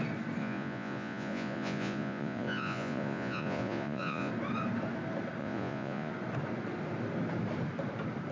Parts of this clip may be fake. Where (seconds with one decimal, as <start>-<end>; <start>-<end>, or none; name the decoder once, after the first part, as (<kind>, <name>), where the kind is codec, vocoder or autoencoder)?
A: 0.4-4.3 (vocoder, Vocos); 5.4-6.1